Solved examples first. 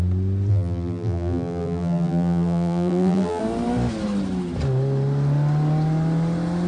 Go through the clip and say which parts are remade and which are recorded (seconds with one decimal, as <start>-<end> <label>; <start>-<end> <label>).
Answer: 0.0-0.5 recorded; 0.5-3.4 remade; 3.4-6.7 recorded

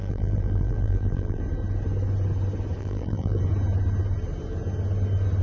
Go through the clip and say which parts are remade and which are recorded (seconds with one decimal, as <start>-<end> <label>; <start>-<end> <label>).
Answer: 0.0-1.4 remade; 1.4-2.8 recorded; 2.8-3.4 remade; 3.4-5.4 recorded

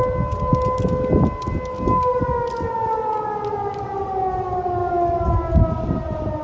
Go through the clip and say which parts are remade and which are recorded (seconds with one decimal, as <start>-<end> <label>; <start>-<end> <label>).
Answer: 0.0-6.4 recorded

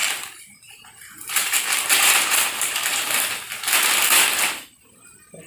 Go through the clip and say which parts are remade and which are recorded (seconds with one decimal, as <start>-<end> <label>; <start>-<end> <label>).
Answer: 0.0-3.3 remade; 3.3-5.5 recorded

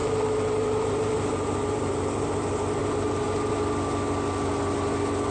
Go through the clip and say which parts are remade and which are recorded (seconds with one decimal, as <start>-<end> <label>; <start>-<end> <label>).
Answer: 0.0-2.3 remade; 2.3-2.8 recorded; 2.8-3.5 remade; 3.5-5.3 recorded

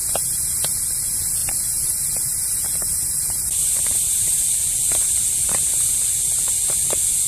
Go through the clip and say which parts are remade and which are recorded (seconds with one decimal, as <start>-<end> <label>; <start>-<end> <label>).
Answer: 0.0-0.8 remade; 0.8-1.4 recorded; 1.4-4.4 remade; 4.4-7.3 recorded

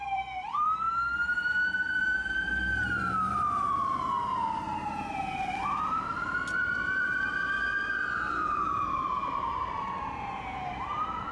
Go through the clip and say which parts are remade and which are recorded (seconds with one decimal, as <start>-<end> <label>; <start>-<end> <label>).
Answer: 0.0-11.3 remade

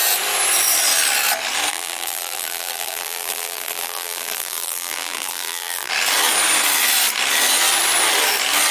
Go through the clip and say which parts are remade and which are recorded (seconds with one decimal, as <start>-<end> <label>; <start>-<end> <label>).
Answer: 0.0-1.7 recorded; 1.7-5.9 remade; 5.9-8.7 recorded